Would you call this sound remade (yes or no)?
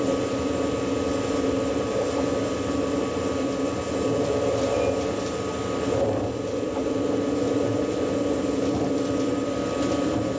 no